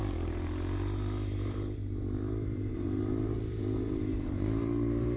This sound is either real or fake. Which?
fake